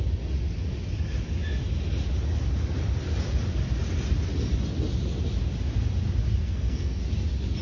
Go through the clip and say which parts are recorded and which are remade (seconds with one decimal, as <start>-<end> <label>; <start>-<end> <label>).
0.0-6.4 recorded; 6.4-7.0 remade; 7.0-7.6 recorded